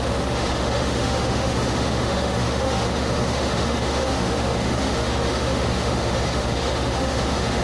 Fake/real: fake